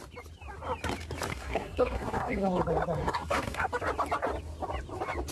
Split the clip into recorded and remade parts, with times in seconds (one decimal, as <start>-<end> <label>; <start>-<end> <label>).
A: 0.0-1.3 recorded; 1.3-2.6 remade; 2.6-3.0 recorded; 3.0-3.7 remade; 3.7-5.3 recorded